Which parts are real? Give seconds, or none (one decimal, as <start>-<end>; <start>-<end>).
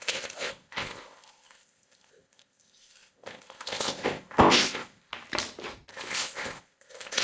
5.1-5.9